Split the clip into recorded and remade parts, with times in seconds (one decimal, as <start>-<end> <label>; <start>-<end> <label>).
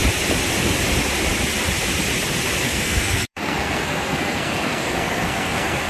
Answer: 0.0-2.6 recorded; 2.6-5.9 remade